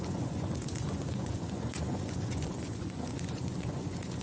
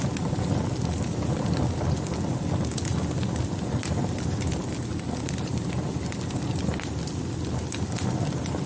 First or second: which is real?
second